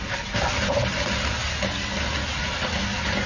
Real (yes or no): yes